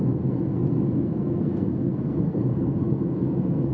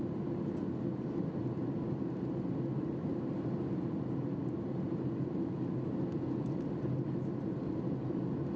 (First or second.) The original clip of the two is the second